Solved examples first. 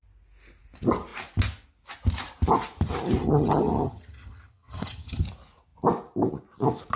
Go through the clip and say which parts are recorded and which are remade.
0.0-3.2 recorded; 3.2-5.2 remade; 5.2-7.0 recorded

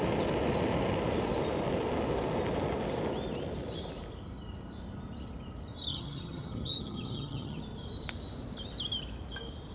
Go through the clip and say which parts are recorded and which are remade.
0.0-5.9 recorded; 5.9-7.6 remade; 7.6-9.7 recorded

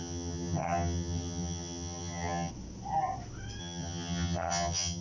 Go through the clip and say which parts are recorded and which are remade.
0.0-2.5 remade; 2.5-3.6 recorded; 3.6-5.0 remade

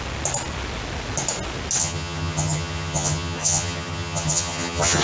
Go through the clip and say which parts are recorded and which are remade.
0.0-1.8 recorded; 1.8-5.0 remade

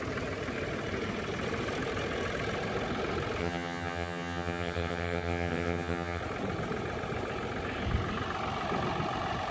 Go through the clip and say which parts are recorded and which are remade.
0.0-3.4 recorded; 3.4-6.2 remade; 6.2-9.5 recorded

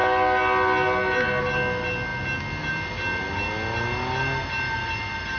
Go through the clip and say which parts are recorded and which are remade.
0.0-5.4 recorded

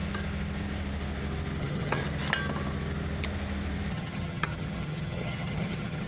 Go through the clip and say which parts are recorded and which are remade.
0.0-1.6 recorded; 1.6-2.0 remade; 2.0-3.9 recorded; 3.9-6.1 remade

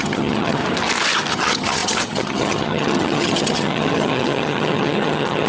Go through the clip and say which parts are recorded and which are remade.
0.0-0.6 remade; 0.6-1.3 recorded; 1.3-5.5 remade